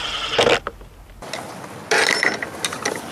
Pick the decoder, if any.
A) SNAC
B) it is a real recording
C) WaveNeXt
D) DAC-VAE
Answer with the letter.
B